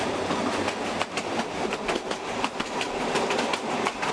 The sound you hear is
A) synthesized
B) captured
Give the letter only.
B